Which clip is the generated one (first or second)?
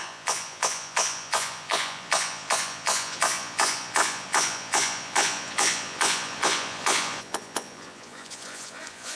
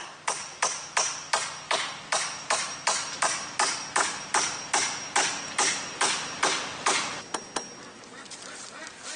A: first